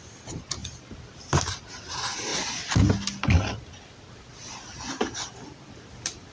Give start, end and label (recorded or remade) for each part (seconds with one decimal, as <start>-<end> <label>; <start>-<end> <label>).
0.0-6.3 recorded